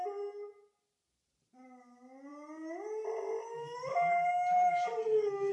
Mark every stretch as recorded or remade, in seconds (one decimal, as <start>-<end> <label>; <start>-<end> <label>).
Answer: 0.0-5.0 recorded; 5.0-5.5 remade